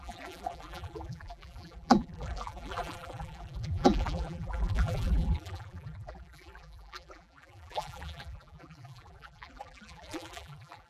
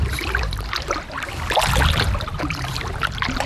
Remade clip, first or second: first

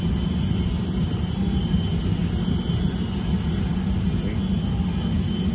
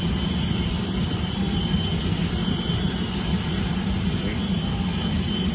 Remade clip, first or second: second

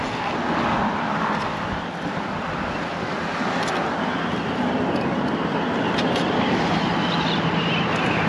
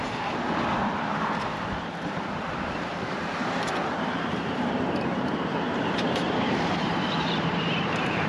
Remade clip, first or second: second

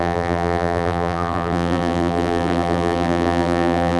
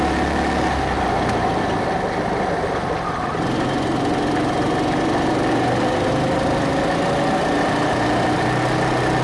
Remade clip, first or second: first